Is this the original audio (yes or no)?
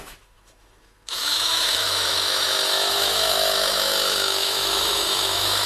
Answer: no